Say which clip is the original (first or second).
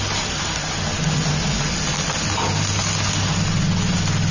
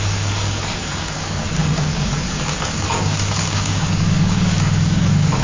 first